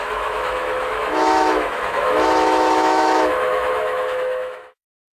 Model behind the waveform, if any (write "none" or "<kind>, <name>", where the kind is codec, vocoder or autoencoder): autoencoder, DAC-VAE